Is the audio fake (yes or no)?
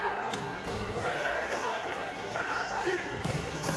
yes